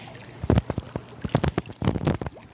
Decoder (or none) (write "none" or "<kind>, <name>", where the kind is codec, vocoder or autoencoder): none